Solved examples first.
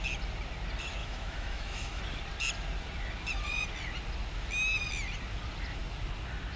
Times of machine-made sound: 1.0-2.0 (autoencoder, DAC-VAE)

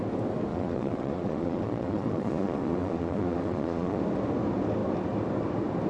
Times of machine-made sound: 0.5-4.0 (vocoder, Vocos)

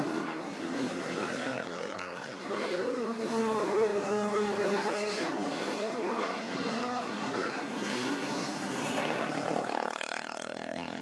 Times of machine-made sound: 0.0-11.0 (codec, SNAC)

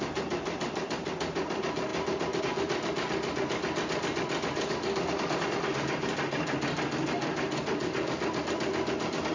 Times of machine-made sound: none